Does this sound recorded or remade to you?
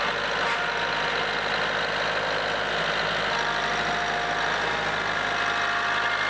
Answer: recorded